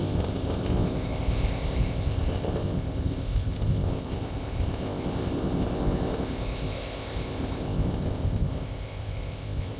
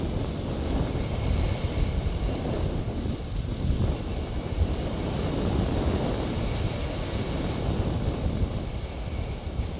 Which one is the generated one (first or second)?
first